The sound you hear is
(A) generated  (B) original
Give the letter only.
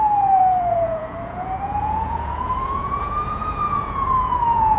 A